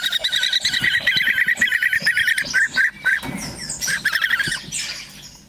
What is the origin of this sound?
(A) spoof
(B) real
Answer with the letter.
B